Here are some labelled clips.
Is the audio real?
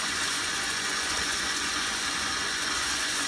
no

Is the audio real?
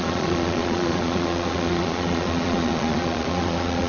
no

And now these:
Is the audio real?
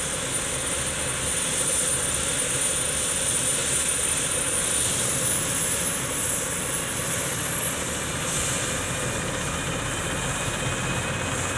yes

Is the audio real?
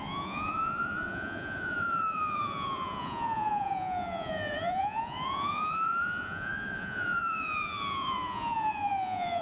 no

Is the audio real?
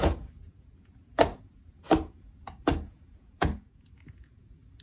no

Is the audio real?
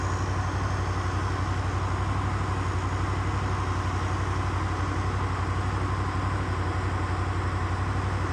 yes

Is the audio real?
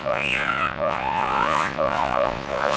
no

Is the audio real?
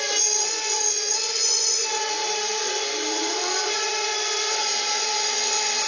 no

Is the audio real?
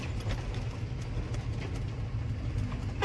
yes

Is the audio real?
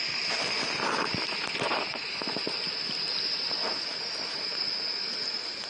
yes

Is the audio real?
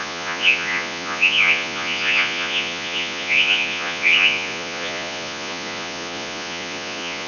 no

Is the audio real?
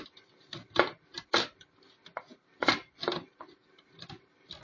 yes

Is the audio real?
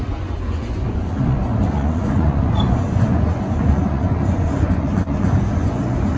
no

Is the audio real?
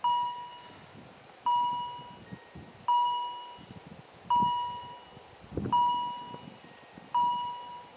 yes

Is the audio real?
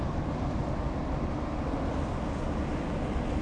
yes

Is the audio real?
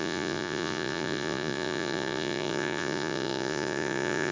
no